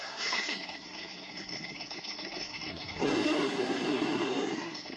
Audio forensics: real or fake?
fake